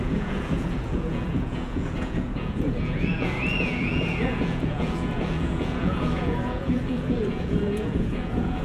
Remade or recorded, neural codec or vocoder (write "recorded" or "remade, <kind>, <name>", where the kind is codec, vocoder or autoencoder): remade, vocoder, Vocos